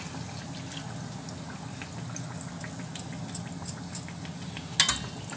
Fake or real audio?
real